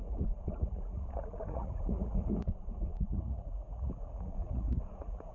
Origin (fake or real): fake